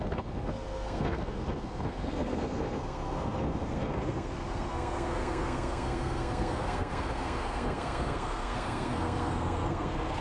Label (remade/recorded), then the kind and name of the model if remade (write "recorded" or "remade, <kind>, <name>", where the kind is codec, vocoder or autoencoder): remade, codec, SNAC